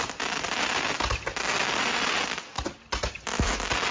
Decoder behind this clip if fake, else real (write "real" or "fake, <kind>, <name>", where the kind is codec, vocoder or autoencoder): real